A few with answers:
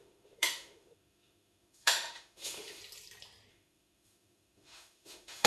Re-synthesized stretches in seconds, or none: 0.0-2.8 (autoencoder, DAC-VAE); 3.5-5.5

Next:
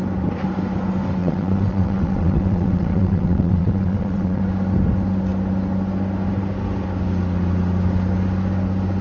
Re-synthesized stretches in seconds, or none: 1.2-4.4 (vocoder, WaveNeXt)

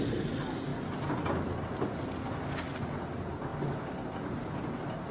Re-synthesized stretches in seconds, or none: none

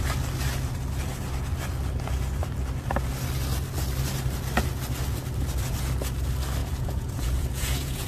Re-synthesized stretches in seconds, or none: 6.6-8.1 (vocoder, Vocos)